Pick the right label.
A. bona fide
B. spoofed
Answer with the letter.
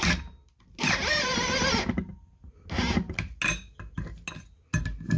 A